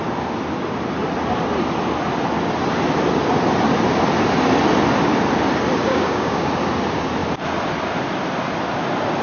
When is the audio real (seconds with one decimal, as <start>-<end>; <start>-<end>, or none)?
0.0-5.9; 6.5-9.2